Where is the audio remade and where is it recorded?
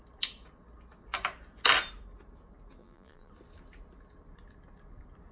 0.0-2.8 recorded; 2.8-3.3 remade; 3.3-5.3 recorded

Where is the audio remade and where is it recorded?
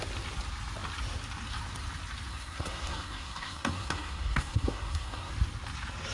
0.0-2.3 recorded; 2.3-5.3 remade; 5.3-6.1 recorded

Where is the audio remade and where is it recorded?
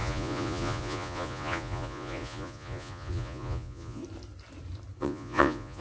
0.0-4.0 remade; 4.0-5.0 recorded; 5.0-5.8 remade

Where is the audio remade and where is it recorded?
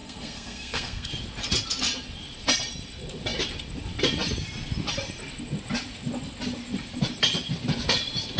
0.0-1.1 remade; 1.1-8.4 recorded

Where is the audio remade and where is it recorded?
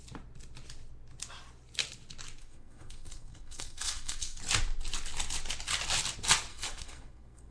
0.0-2.4 recorded; 2.4-4.4 remade; 4.4-6.5 recorded; 6.5-7.5 remade